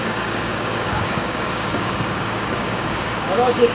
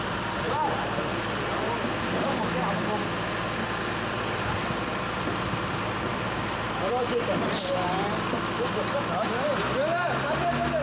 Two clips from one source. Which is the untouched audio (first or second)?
second